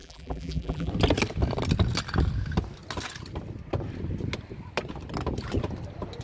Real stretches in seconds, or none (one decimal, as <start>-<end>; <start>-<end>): 0.9-6.2